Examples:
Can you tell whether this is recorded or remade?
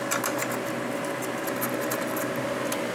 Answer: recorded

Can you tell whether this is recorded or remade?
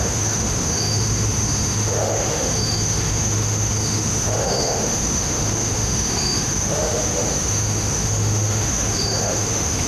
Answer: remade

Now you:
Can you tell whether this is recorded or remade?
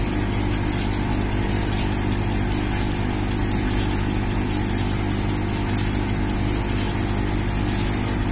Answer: recorded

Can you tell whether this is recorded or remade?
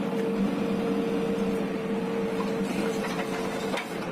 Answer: recorded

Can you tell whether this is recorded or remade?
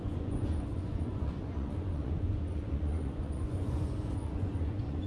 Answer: remade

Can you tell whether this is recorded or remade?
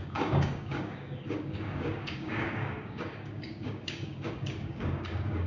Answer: remade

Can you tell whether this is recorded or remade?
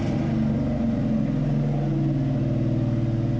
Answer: recorded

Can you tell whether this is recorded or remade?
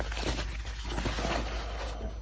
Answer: recorded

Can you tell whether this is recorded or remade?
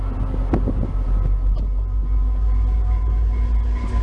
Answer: recorded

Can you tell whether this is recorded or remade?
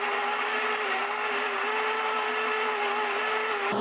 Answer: recorded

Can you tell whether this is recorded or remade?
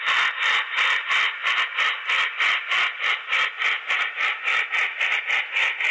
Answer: recorded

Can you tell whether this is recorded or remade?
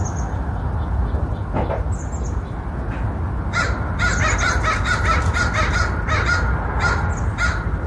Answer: recorded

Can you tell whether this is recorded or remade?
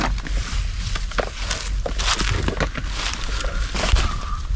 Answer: recorded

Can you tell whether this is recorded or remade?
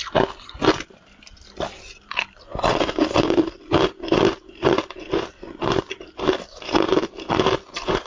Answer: recorded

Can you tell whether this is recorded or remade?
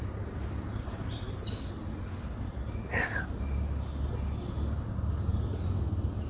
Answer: recorded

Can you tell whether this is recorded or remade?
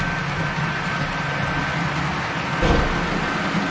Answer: recorded